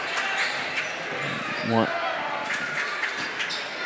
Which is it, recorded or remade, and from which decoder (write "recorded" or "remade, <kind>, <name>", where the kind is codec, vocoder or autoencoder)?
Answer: recorded